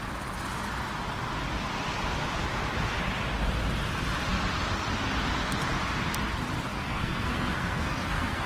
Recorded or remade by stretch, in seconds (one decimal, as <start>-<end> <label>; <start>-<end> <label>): 0.0-6.7 recorded; 6.7-8.5 remade